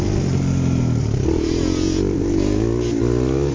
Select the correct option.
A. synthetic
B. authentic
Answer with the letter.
B